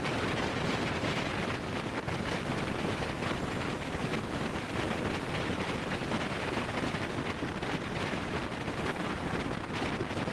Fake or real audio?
real